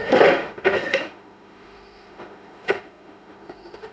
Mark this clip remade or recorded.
remade